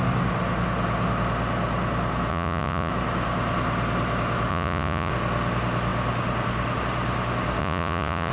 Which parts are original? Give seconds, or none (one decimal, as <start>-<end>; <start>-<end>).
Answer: 0.0-2.3; 2.9-4.5; 5.1-7.6